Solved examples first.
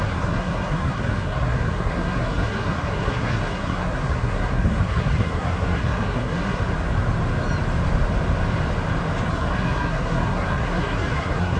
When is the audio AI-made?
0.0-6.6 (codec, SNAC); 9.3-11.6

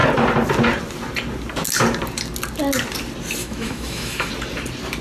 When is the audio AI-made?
3.4-4.3 (autoencoder, DAC-VAE)